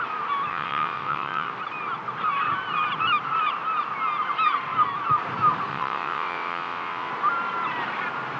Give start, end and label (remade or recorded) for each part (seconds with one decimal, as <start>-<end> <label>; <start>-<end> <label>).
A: 0.0-0.5 recorded; 0.5-1.5 remade; 1.5-5.7 recorded; 5.7-7.1 remade; 7.1-8.4 recorded